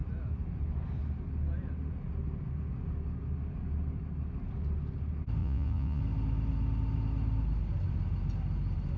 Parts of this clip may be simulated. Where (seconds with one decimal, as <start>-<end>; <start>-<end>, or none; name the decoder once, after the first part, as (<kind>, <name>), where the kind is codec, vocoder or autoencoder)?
5.4-6.0 (vocoder, Vocos)